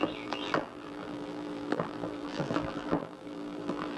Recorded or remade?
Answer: remade